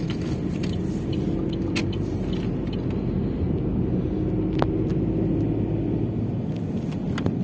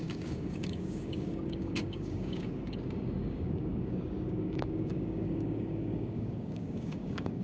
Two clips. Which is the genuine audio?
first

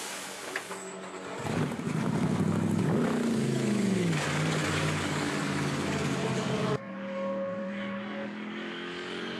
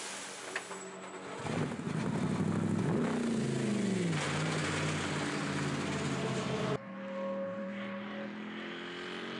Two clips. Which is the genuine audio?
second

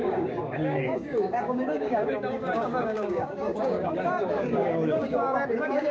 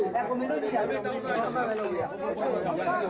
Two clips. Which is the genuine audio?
second